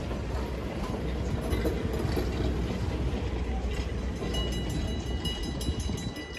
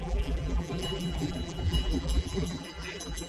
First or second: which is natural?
first